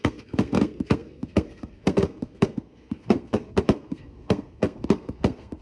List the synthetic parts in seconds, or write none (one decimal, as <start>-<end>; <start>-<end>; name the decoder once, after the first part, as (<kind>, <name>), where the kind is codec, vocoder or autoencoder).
0.0-5.6 (codec, SNAC)